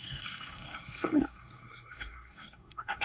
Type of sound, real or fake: fake